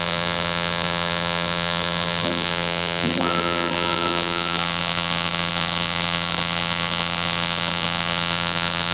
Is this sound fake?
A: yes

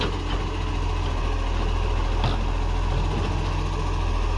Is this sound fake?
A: no